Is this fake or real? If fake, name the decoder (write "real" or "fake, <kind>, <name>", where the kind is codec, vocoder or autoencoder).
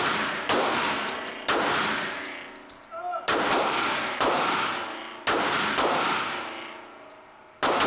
real